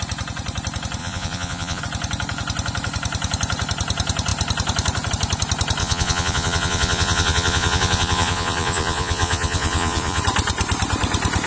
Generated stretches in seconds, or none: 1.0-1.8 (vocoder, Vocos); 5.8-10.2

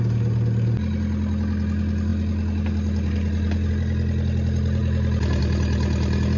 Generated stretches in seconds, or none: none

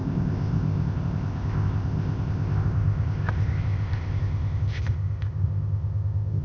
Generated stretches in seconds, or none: 0.0-6.4 (codec, ZipCodec)

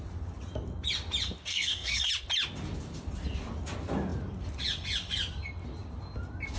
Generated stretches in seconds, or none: 1.5-2.1 (codec, SNAC)

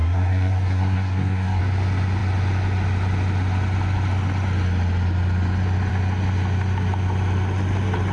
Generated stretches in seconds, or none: 0.0-1.6 (codec, SNAC)

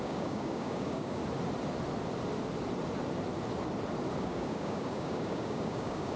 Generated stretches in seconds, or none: 0.0-1.2 (codec, DAC); 4.2-6.2

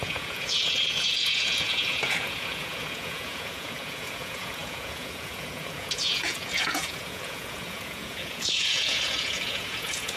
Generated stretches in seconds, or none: 0.0-10.2 (vocoder, Vocos)